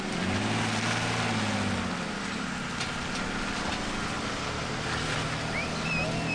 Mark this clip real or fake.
real